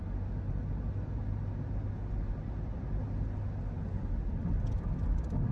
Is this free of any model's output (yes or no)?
yes